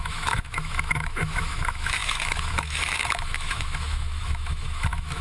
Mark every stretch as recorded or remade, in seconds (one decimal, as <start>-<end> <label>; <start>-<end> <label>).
0.0-5.2 remade